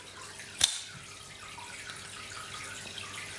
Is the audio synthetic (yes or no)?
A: no